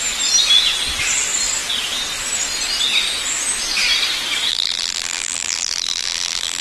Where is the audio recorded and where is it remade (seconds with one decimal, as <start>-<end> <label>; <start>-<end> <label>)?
0.0-4.5 recorded; 4.5-6.6 remade